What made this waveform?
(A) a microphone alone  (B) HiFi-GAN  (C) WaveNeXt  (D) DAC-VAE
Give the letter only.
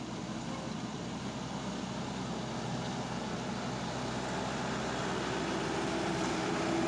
A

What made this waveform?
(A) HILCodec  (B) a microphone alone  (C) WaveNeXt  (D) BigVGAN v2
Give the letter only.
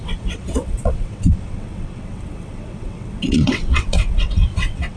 C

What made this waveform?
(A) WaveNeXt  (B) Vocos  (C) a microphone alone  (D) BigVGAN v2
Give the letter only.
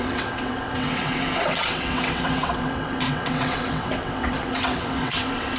A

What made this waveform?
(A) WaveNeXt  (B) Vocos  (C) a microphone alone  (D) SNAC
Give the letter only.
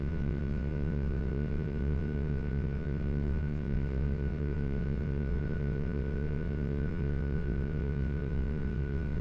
A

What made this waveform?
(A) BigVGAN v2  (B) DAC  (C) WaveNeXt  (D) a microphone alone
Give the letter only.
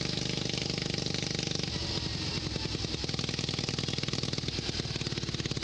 D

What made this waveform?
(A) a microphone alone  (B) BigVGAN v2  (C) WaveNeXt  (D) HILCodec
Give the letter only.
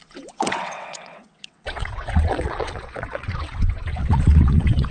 C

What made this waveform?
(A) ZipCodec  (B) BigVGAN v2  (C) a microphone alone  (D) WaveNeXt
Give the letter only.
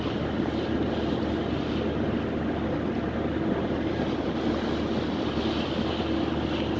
C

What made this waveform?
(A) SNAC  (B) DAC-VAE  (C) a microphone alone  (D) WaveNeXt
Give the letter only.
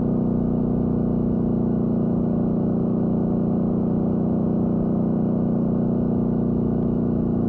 C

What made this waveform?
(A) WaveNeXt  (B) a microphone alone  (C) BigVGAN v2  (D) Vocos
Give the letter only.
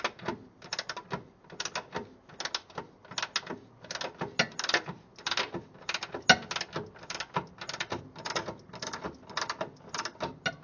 B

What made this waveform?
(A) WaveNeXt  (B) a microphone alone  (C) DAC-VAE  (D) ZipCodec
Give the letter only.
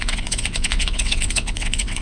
A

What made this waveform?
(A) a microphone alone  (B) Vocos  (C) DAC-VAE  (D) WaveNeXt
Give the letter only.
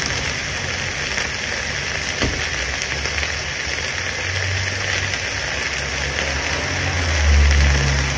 A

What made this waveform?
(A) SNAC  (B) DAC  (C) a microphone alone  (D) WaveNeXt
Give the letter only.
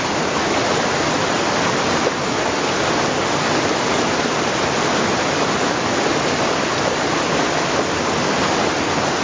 C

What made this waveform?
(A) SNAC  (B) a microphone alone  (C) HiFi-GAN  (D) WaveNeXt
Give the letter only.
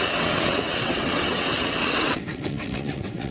D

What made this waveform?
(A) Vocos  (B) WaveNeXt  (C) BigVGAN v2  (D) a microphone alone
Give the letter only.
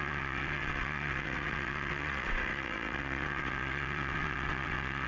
B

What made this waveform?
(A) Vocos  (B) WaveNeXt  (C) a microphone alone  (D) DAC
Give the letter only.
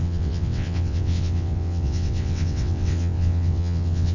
B